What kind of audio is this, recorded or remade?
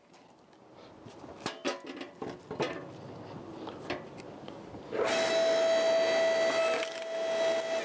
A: recorded